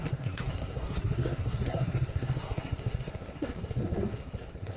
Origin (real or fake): fake